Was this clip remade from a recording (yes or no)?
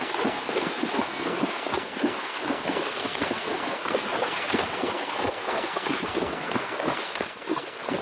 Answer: yes